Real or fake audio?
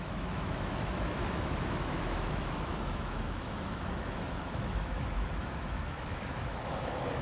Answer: fake